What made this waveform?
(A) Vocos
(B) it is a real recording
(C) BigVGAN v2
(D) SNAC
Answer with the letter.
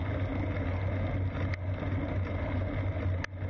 B